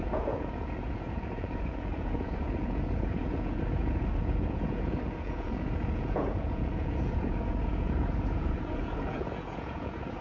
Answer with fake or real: fake